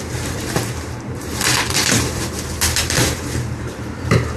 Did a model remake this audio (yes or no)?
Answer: yes